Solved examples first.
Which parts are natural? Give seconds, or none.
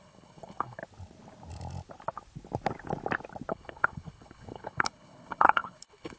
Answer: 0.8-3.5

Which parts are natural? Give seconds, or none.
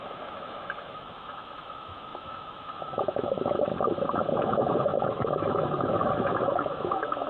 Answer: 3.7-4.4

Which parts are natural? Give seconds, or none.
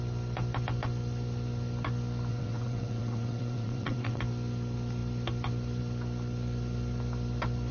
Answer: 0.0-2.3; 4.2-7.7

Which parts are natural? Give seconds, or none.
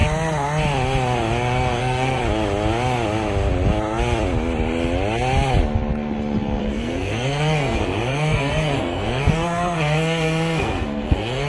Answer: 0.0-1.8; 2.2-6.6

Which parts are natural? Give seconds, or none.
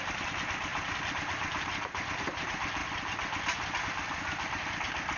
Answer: 0.7-2.2; 2.8-3.8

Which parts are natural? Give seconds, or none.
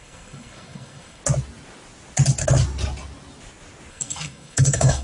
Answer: 1.2-3.9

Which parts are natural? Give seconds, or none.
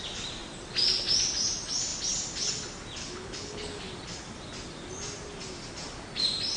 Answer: 0.0-3.0; 3.8-6.6